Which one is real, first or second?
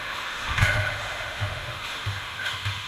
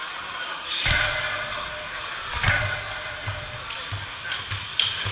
second